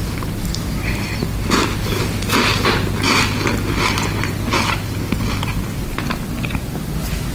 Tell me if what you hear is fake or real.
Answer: real